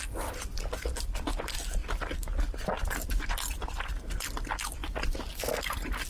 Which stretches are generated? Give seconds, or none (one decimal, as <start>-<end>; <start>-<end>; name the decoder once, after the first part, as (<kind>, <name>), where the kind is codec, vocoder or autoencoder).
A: none